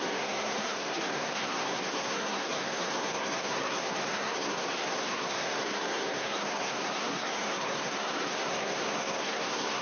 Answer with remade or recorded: remade